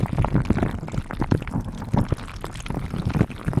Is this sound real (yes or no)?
yes